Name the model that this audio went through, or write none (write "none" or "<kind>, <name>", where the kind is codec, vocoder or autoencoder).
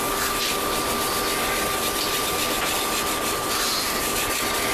vocoder, BigVGAN v2